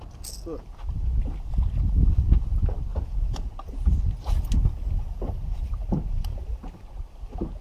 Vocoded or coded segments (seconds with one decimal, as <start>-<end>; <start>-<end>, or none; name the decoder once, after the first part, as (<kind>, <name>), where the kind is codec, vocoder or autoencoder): 2.9-3.5 (vocoder, Vocos)